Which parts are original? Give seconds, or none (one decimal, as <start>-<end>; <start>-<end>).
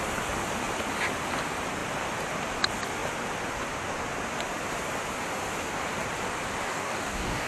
0.0-6.7